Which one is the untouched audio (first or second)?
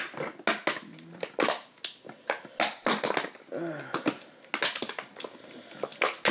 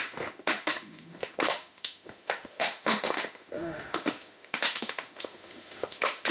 first